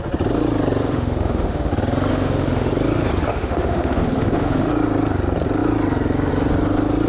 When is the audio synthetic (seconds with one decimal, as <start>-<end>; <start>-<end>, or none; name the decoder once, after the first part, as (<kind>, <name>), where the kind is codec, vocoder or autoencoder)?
0.8-1.7 (autoencoder, DAC-VAE); 2.1-2.7; 3.3-4.7